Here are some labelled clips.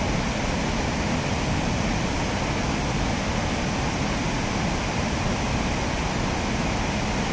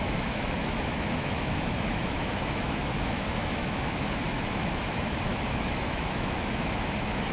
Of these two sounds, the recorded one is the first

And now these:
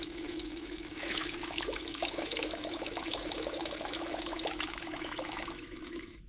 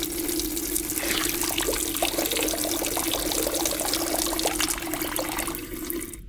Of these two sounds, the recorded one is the second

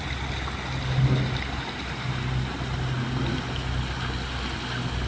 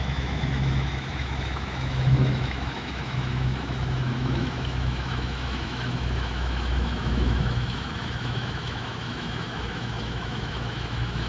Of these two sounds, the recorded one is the first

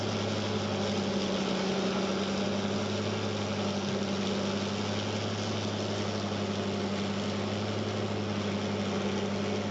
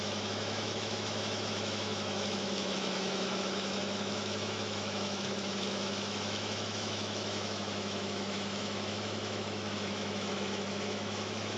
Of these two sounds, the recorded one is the first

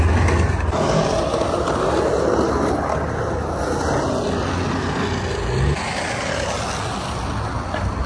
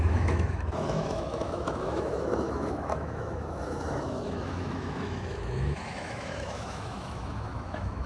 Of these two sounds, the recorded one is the first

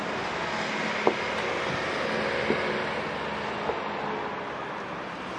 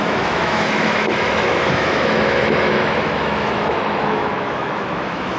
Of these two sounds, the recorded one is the first